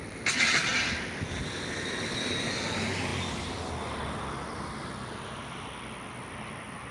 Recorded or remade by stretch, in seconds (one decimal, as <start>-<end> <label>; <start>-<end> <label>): 0.0-6.9 recorded